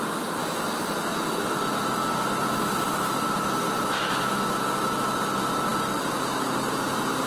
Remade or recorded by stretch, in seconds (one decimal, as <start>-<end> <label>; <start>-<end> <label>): 0.0-7.3 recorded